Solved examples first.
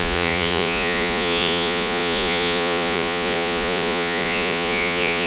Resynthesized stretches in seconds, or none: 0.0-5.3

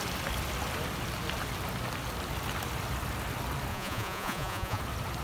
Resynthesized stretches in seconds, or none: 3.7-4.8